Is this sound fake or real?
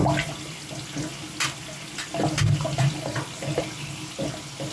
real